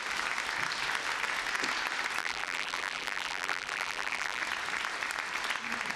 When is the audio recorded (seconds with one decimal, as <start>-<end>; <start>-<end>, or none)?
0.0-2.2; 4.4-6.0